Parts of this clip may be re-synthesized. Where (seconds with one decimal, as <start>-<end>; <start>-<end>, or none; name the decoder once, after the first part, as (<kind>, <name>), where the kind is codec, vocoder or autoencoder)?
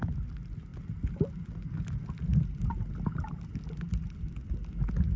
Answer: none